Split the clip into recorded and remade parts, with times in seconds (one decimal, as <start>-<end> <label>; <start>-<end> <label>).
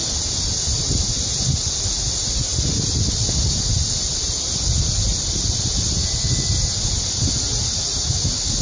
0.0-8.6 recorded